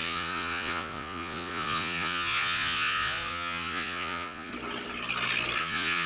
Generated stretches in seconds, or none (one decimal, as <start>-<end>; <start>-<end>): 0.0-4.5; 5.6-6.1